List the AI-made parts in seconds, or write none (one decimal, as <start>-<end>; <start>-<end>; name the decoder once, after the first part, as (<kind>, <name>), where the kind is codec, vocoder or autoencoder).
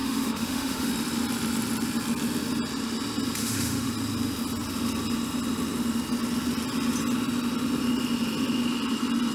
0.0-0.9 (autoencoder, DAC-VAE); 3.4-3.9